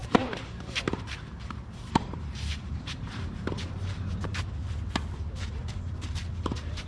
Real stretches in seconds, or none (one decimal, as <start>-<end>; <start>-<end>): 4.1-5.6